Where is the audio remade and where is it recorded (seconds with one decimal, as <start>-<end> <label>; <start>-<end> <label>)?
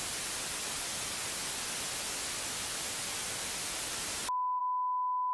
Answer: 0.0-5.3 recorded